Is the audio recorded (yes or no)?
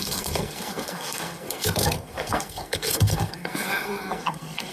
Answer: no